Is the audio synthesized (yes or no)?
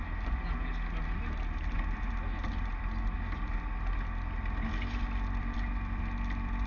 no